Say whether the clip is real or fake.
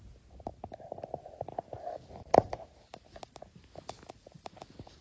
real